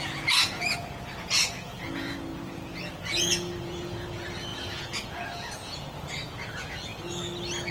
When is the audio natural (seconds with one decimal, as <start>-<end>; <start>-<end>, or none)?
6.9-7.7